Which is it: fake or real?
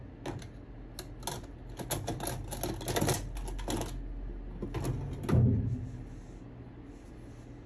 real